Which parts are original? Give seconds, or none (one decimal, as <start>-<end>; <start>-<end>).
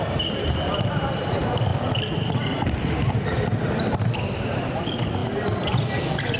0.0-6.4